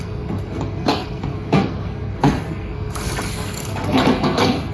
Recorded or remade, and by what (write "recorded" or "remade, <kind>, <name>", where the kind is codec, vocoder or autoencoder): remade, codec, SNAC